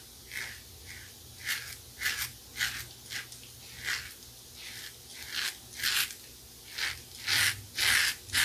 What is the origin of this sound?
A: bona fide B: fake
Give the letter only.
A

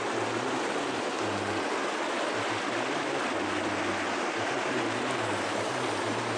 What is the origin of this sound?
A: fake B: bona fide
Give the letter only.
B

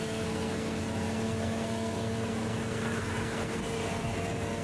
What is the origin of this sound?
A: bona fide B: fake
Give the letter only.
B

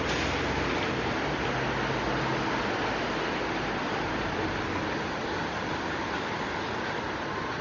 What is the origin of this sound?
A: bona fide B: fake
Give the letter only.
A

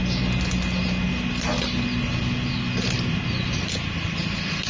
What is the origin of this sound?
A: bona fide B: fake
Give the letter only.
A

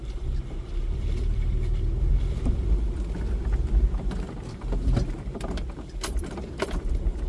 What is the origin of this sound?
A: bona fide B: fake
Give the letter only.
B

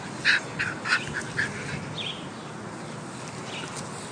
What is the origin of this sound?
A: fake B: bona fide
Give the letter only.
B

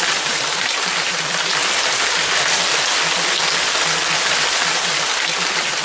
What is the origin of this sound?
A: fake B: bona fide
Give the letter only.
B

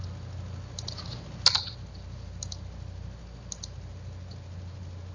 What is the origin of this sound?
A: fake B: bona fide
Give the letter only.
B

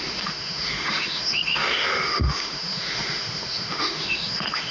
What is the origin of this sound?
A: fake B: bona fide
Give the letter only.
A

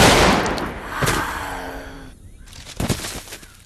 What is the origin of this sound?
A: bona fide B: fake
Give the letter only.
A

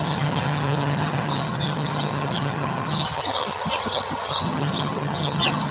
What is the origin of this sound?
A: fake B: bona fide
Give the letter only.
A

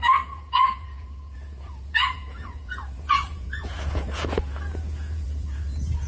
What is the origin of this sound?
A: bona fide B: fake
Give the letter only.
B